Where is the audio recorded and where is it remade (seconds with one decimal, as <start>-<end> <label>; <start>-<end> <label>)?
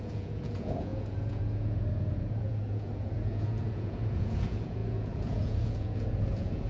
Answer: 0.0-6.7 remade